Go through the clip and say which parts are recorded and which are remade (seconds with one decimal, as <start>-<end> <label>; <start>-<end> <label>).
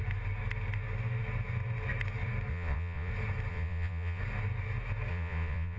0.0-2.5 recorded; 2.5-3.1 remade; 3.1-3.5 recorded; 3.5-4.2 remade; 4.2-5.1 recorded; 5.1-5.8 remade